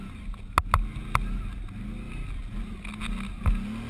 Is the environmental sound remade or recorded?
recorded